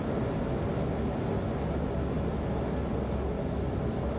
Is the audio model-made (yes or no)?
no